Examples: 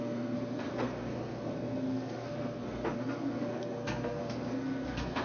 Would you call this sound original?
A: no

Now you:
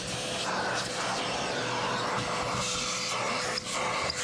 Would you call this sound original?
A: yes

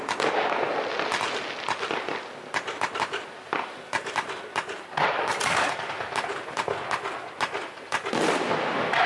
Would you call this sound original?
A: yes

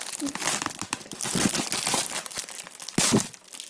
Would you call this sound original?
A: yes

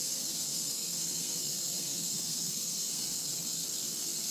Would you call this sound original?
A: no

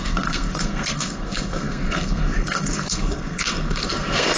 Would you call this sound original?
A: no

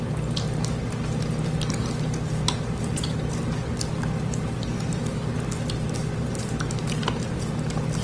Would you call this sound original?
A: yes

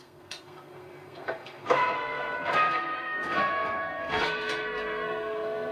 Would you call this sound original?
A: no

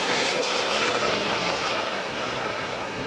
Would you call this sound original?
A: no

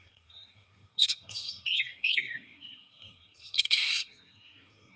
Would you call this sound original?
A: no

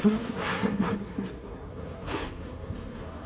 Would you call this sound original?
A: no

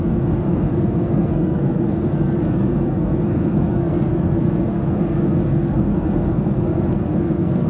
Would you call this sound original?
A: no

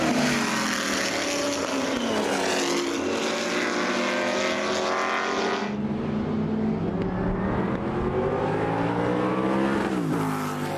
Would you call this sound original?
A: yes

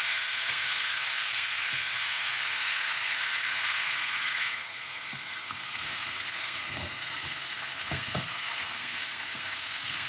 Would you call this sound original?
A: no